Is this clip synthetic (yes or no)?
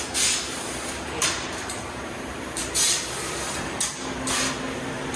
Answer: yes